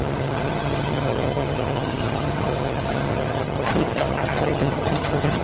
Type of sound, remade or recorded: remade